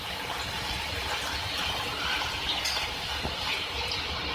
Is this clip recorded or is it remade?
recorded